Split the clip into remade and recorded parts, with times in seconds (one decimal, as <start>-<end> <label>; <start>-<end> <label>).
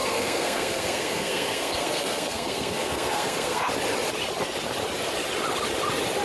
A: 0.0-3.7 remade; 3.7-6.2 recorded